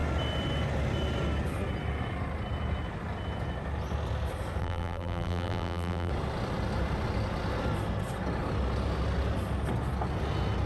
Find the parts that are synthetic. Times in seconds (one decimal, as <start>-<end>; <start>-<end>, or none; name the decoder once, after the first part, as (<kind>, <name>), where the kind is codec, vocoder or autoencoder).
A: 4.6-6.1 (vocoder, BigVGAN v2)